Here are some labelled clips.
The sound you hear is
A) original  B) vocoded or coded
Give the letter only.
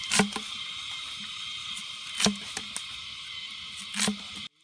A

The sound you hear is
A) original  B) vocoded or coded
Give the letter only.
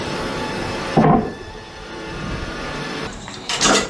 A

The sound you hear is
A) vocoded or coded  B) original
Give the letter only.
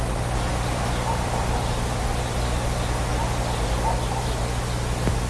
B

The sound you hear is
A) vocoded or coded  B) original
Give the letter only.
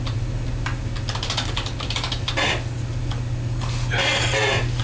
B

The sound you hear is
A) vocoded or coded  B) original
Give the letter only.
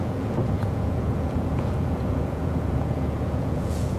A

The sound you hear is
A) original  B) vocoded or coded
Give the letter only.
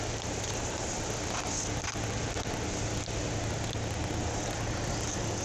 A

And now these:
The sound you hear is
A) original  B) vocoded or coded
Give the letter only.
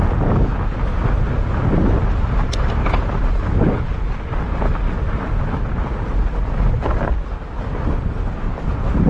A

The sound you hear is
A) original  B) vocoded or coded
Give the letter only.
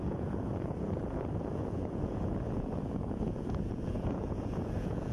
B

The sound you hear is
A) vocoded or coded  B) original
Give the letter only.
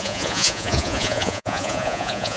A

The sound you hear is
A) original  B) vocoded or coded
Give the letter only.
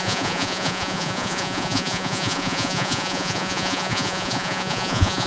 B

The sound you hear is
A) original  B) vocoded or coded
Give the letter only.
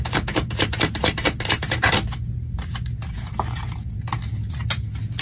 A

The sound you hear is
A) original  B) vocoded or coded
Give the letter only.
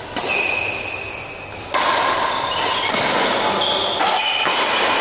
A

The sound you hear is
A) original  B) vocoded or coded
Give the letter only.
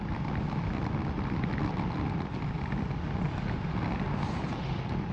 A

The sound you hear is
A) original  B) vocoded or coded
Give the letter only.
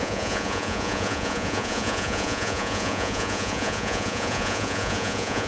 B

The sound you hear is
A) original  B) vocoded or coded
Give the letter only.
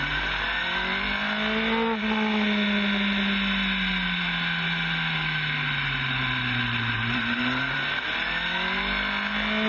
A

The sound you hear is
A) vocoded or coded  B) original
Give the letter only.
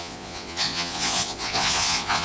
A